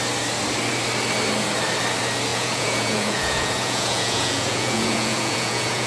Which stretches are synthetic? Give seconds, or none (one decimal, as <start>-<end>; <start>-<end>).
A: 2.3-5.9